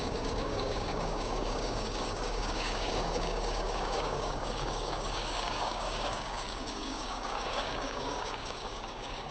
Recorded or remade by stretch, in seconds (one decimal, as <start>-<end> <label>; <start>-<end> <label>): 0.0-9.3 remade